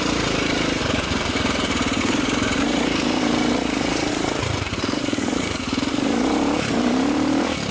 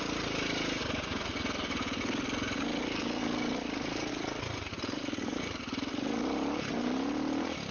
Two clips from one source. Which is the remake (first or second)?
first